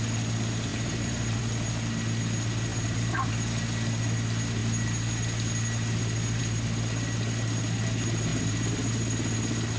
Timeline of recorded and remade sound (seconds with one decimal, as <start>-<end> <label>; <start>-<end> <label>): 0.0-0.7 recorded; 0.7-1.4 remade; 1.4-2.7 recorded; 2.7-3.3 remade; 3.3-8.3 recorded; 8.3-8.9 remade; 8.9-9.8 recorded